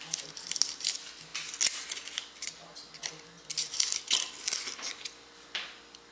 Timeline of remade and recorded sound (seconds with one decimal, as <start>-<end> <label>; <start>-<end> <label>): 0.0-6.1 recorded